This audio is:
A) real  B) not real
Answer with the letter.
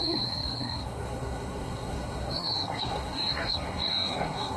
B